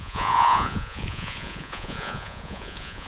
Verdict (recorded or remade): remade